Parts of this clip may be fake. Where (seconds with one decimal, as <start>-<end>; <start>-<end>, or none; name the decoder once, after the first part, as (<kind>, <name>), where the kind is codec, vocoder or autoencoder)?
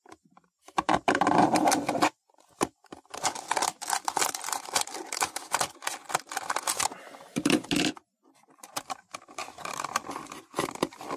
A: 9.4-10.7 (vocoder, BigVGAN v2)